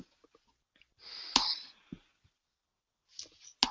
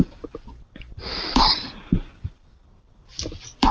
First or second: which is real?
first